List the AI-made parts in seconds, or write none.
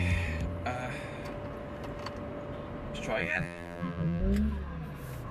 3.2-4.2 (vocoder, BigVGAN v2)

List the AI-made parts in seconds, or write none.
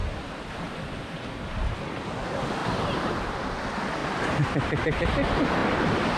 2.6-3.4 (vocoder, BigVGAN v2); 4.0-5.0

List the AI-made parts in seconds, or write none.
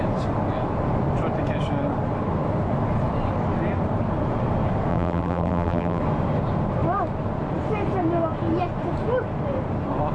4.9-6.0 (vocoder, BigVGAN v2)